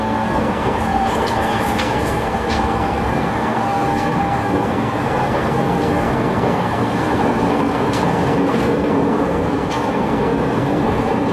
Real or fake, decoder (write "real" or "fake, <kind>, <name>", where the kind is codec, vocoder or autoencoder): fake, codec, SNAC